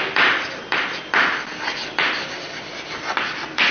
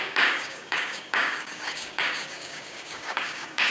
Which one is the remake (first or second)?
second